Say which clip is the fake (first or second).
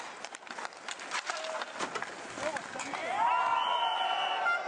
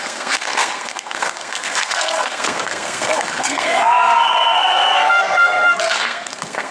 second